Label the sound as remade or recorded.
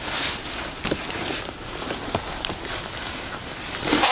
recorded